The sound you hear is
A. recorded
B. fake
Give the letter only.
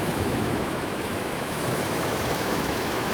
B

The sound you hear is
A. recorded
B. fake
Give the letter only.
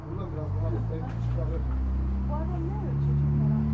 A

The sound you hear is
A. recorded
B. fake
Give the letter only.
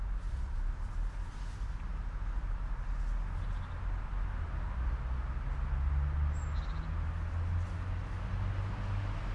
A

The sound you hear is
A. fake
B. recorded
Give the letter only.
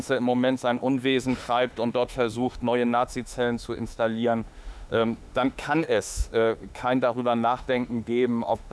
A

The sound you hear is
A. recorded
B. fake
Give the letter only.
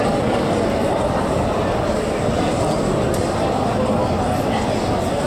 A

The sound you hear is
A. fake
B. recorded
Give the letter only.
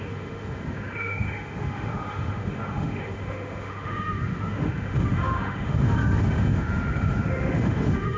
A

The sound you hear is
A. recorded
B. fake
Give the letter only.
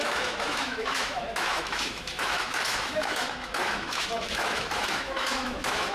B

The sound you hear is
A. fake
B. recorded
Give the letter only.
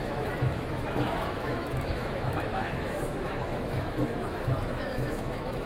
A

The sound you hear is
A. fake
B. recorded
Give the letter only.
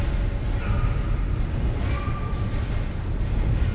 B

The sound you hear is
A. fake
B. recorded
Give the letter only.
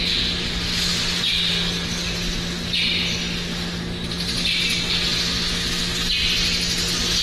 B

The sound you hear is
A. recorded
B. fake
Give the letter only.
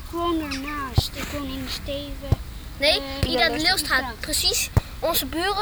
A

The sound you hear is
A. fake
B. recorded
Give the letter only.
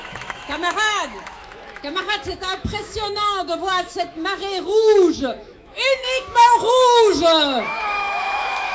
A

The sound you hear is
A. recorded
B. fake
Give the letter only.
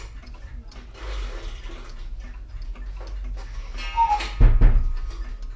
A